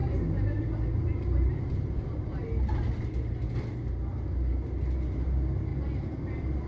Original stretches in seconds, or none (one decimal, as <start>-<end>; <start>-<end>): 0.0-6.7